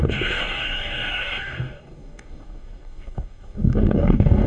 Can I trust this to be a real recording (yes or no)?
no